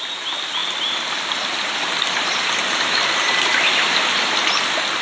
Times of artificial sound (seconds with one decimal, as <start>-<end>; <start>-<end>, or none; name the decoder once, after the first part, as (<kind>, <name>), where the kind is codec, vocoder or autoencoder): 0.6-3.6 (vocoder, BigVGAN v2)